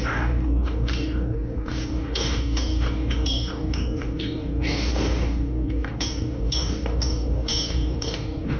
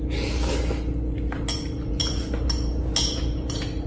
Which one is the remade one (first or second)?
first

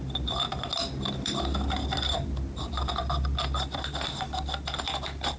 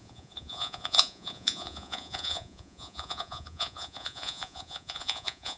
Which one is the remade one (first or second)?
second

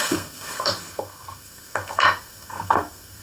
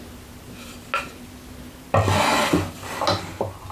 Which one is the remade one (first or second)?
first